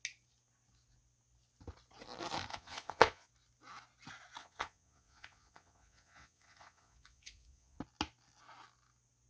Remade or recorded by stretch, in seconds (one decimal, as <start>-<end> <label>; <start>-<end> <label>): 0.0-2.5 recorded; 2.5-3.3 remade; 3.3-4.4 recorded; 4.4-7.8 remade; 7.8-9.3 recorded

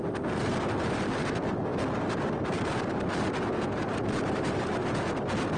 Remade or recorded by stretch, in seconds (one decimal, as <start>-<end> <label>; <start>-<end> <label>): 0.0-5.6 recorded

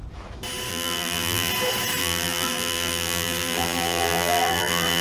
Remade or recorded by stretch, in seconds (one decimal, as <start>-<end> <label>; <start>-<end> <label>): 0.0-0.7 recorded; 0.7-1.5 remade; 1.5-2.0 recorded; 2.0-5.0 remade

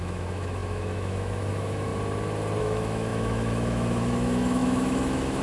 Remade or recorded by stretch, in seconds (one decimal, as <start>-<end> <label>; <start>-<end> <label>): 0.0-1.9 remade; 1.9-2.6 recorded; 2.6-5.4 remade

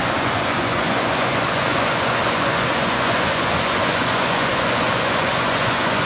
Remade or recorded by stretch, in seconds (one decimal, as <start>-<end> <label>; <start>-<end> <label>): 0.0-6.1 remade

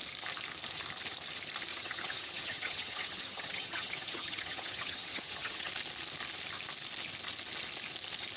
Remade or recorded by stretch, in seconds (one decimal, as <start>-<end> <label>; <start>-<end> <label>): 0.0-1.7 recorded; 1.7-5.7 remade; 5.7-8.4 recorded

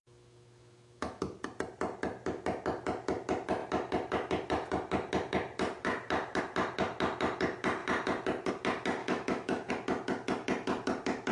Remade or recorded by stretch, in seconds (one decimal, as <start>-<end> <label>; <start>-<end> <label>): 0.0-1.2 remade; 1.2-9.0 recorded; 9.0-9.7 remade; 9.7-11.3 recorded